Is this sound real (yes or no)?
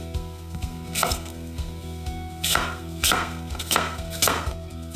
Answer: no